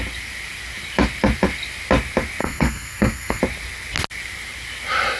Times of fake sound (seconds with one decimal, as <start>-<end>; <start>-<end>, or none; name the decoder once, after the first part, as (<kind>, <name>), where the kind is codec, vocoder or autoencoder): 2.4-3.4 (codec, SNAC)